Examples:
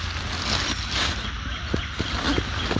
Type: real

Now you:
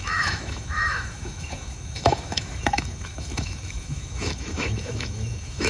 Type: fake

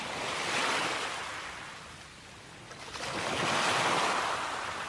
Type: real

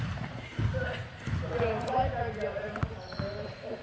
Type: real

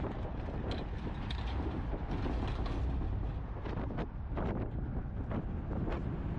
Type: real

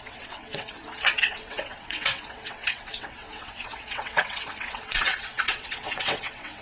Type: fake